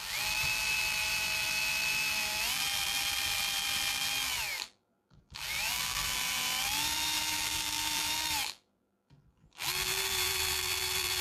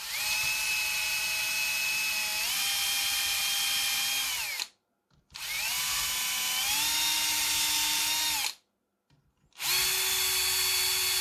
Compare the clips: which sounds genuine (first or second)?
second